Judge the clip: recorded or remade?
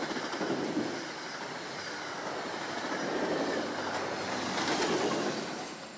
recorded